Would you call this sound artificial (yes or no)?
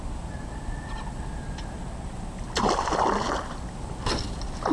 no